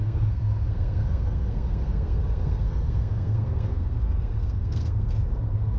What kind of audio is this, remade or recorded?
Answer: remade